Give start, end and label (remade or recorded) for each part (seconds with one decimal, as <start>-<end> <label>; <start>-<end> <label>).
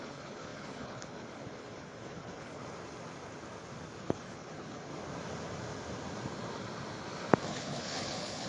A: 0.0-2.6 remade; 2.6-4.0 recorded; 4.0-4.9 remade; 4.9-7.5 recorded; 7.5-8.5 remade